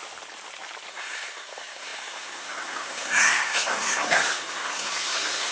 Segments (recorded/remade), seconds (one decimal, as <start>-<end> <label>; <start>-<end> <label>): 0.0-0.9 recorded; 0.9-5.5 remade